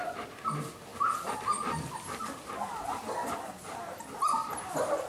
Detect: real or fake real